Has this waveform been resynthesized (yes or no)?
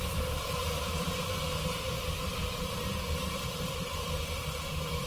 yes